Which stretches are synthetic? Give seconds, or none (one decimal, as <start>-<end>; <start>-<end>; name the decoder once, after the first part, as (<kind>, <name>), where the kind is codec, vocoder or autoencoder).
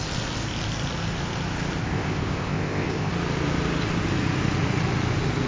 1.8-3.1 (codec, ZipCodec)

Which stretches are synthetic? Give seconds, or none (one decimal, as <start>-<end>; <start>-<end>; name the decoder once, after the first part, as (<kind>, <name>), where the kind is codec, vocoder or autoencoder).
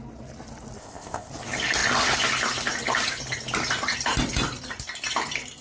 0.8-1.3 (codec, ZipCodec)